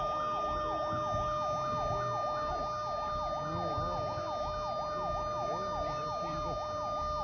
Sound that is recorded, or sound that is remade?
recorded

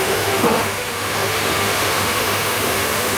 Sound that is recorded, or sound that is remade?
remade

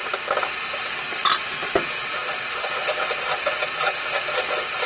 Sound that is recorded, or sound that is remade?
recorded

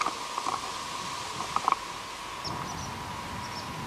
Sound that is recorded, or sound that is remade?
recorded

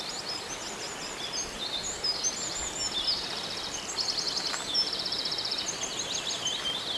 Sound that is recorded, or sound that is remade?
recorded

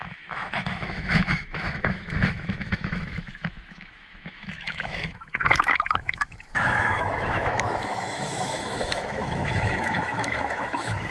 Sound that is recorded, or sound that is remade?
remade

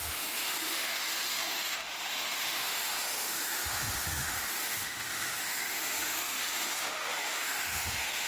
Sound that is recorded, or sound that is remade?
remade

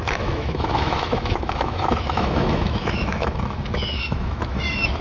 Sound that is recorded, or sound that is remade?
remade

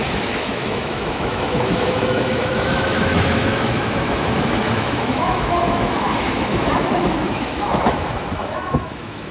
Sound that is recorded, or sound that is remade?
remade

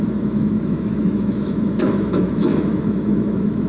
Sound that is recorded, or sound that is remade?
remade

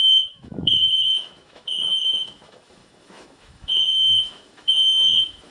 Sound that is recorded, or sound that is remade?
remade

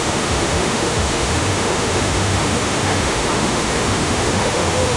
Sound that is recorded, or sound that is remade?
remade